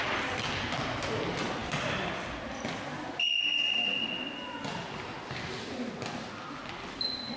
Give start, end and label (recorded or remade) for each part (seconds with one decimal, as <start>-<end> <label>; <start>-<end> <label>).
0.0-7.4 recorded